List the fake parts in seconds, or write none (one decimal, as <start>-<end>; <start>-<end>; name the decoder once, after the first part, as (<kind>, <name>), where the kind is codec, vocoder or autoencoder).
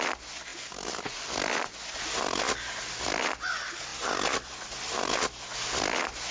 none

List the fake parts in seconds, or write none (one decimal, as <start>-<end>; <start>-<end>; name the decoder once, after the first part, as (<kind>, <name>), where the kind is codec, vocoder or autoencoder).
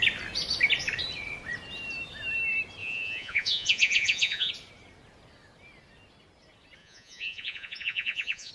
2.8-4.5 (vocoder, Vocos); 6.8-8.5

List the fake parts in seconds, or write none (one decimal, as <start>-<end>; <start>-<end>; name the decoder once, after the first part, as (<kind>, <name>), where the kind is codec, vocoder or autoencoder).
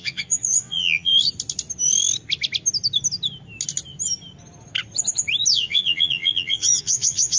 0.0-1.1 (vocoder, Vocos); 5.5-7.4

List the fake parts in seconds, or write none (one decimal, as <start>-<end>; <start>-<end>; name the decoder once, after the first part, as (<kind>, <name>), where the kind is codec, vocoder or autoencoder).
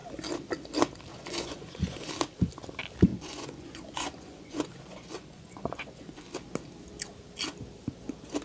1.1-2.1 (vocoder, Vocos); 3.1-6.3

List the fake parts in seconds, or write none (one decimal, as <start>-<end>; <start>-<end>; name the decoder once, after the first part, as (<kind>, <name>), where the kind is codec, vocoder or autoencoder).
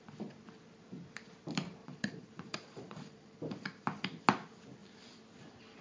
1.8-3.4 (vocoder, Vocos)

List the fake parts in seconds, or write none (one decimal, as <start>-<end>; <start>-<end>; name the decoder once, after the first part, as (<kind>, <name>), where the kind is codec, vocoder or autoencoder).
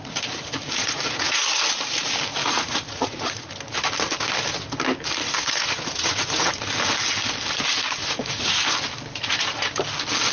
0.8-1.7 (vocoder, Vocos); 2.4-3.5; 5.2-6.5; 8.0-8.7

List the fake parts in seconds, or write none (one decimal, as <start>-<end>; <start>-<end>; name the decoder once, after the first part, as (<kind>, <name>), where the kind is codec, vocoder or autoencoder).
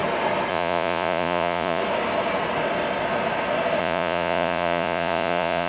0.5-1.8 (vocoder, Vocos); 3.8-5.7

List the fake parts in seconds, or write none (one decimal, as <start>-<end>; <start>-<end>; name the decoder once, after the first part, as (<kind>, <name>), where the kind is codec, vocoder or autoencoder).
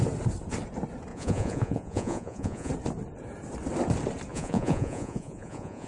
1.1-2.7 (vocoder, Vocos); 4.3-5.9